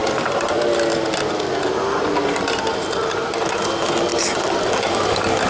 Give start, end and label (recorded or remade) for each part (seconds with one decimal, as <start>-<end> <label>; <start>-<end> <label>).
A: 0.0-0.5 remade; 0.5-4.1 recorded; 4.1-4.7 remade; 4.7-5.5 recorded